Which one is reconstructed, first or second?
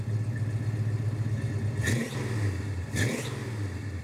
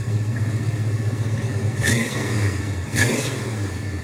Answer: second